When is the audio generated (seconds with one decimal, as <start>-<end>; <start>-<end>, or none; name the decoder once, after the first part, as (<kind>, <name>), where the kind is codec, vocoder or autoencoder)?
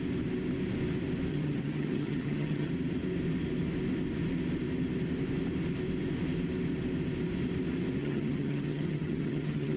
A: 1.3-2.7 (vocoder, HiFi-GAN); 8.0-9.8